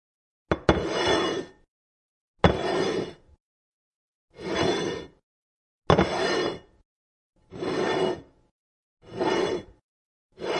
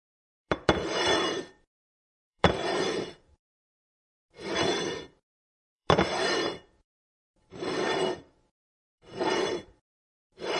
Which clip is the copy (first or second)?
second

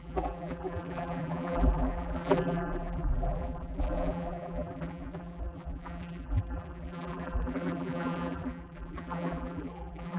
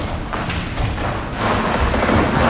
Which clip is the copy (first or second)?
first